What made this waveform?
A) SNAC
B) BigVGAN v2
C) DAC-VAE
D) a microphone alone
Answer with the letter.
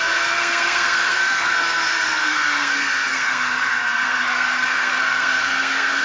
A